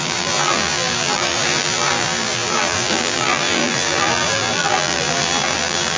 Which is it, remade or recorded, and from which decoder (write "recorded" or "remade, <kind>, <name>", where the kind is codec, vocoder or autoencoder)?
remade, vocoder, BigVGAN v2